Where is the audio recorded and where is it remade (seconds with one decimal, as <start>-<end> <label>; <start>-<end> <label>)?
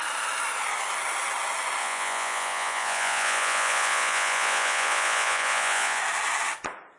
0.0-1.8 recorded; 1.8-6.0 remade; 6.0-7.0 recorded